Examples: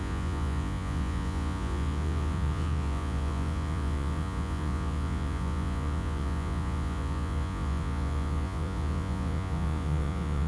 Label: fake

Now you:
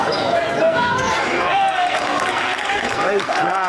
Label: fake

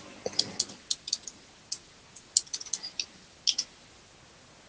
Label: real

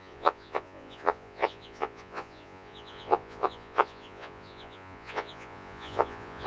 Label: fake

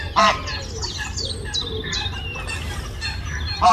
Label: real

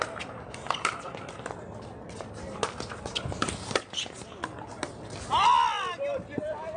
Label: real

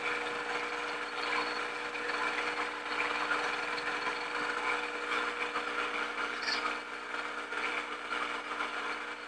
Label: real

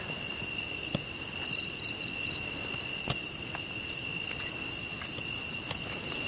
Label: real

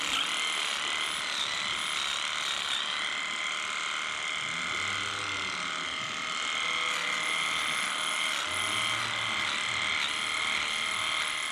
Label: real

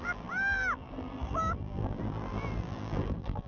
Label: fake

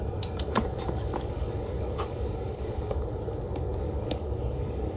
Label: fake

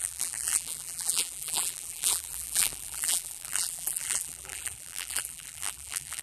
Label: fake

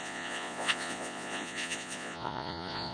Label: fake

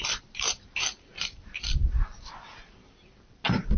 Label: fake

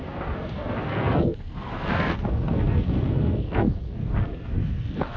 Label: fake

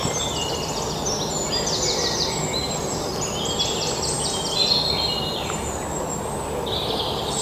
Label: real